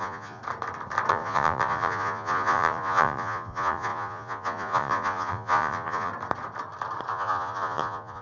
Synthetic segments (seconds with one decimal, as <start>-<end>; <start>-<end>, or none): 0.0-0.4; 1.1-6.1; 7.1-8.2